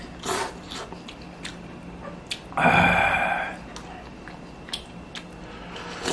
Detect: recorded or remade recorded